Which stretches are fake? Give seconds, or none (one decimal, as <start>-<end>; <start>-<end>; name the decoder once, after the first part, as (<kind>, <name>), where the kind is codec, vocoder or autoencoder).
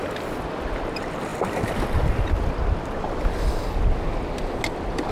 none